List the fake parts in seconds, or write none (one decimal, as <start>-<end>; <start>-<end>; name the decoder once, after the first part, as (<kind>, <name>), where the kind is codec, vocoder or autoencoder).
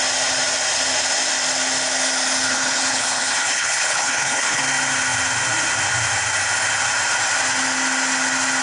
2.5-4.6 (codec, HILCodec)